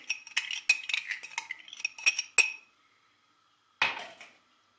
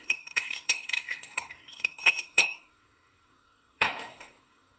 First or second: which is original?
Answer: first